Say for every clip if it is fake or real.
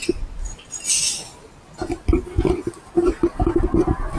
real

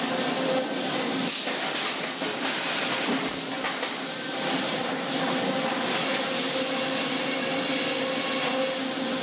real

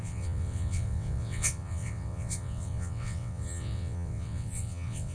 fake